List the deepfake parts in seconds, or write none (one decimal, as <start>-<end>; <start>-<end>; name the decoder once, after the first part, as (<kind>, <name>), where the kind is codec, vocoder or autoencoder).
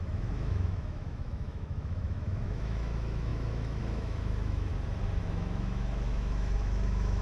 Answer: 0.0-4.7 (autoencoder, DAC-VAE); 5.2-7.2